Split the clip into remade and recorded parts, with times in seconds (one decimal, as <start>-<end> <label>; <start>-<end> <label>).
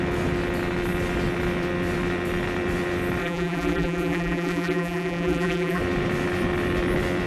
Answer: 0.0-3.2 recorded; 3.2-5.8 remade; 5.8-7.3 recorded